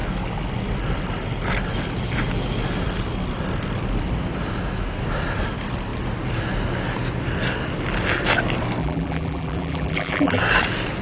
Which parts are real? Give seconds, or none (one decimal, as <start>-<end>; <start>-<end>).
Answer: 0.0-8.8; 10.4-11.0